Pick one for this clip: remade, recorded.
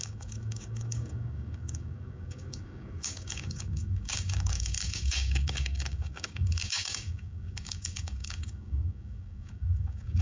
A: remade